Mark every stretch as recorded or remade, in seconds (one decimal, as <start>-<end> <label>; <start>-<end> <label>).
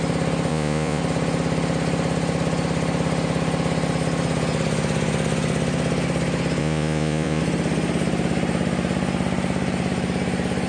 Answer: 0.0-0.5 recorded; 0.5-1.0 remade; 1.0-6.6 recorded; 6.6-7.4 remade; 7.4-10.7 recorded